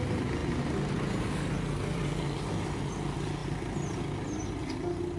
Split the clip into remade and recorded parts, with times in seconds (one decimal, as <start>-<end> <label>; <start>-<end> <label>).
0.0-5.2 recorded